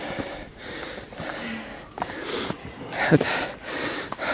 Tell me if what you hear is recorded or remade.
recorded